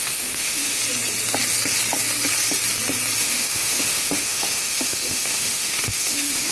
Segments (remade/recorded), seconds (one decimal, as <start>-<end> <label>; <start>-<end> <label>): 0.0-0.8 remade; 0.8-3.2 recorded; 3.2-6.5 remade